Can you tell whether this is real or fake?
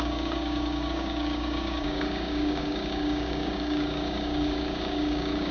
fake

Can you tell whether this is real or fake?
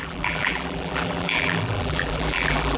fake